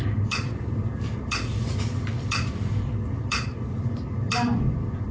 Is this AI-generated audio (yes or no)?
yes